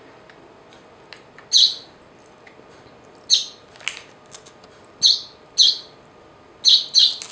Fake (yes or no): no